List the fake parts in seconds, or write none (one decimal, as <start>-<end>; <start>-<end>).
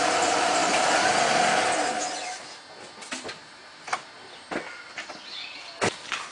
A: 0.0-0.6; 3.0-4.2; 5.1-6.3